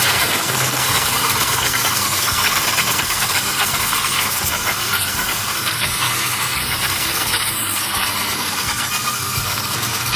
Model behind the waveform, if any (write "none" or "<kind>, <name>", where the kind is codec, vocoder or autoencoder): codec, SNAC